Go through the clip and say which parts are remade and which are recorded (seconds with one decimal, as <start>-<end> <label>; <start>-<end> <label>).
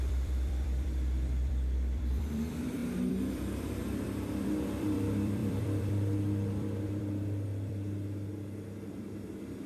0.0-9.7 remade